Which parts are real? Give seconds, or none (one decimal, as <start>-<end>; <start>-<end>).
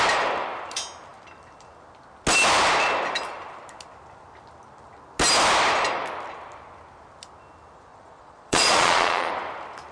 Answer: 0.0-7.9; 9.3-9.9